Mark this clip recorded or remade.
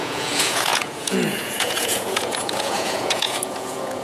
remade